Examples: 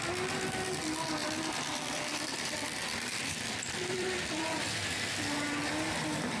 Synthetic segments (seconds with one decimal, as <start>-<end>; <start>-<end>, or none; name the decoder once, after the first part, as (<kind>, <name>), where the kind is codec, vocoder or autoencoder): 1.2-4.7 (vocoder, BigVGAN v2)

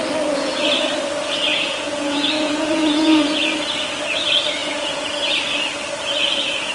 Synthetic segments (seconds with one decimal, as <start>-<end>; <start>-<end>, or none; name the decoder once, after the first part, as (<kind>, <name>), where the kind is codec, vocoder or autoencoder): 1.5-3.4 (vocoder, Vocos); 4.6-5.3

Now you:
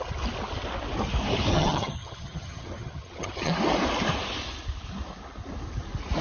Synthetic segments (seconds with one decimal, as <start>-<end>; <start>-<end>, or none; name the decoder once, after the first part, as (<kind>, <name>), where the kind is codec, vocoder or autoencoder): 1.5-3.5 (vocoder, HiFi-GAN)

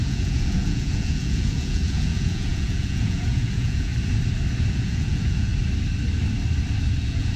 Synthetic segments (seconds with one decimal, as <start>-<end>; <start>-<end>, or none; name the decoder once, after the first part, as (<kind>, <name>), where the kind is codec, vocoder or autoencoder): 0.0-3.9 (vocoder, Vocos); 4.7-5.5; 7.0-7.4

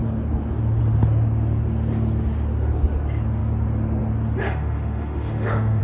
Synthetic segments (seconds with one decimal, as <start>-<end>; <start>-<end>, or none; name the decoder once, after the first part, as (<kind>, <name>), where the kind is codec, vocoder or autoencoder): 4.4-5.8 (autoencoder, DAC-VAE)

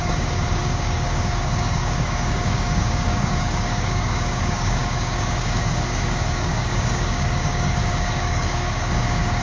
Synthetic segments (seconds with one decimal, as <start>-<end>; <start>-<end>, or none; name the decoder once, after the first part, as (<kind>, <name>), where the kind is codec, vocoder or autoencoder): 0.0-9.4 (codec, DAC)

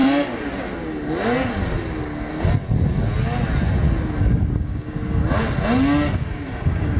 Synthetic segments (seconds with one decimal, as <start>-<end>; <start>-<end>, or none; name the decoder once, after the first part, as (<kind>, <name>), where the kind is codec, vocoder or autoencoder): 4.2-5.2 (codec, DAC); 6.1-7.0